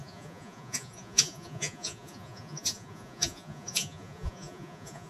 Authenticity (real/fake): fake